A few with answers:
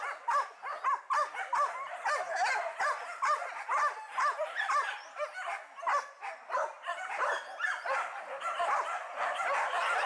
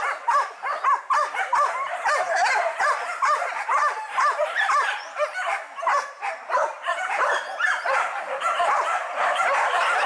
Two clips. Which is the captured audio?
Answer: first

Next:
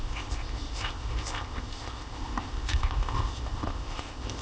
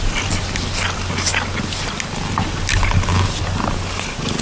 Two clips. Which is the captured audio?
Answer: second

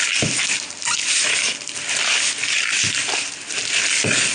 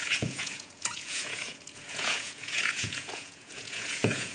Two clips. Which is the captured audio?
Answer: first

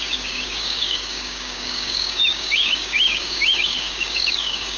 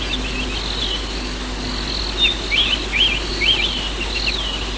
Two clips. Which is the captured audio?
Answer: second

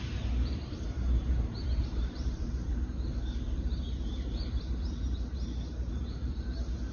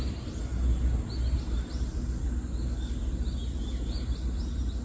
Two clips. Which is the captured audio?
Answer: second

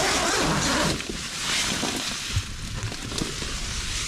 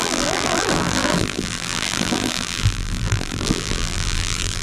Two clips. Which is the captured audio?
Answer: first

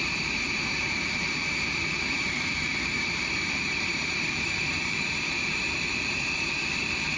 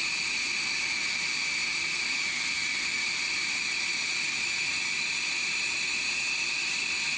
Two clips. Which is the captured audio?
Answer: second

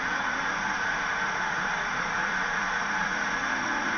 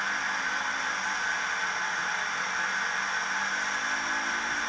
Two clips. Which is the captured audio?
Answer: second